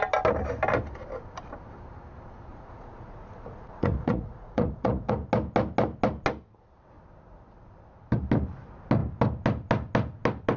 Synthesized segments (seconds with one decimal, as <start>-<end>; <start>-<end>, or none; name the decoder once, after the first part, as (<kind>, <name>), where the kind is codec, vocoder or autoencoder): 2.5-5.1 (vocoder, Vocos)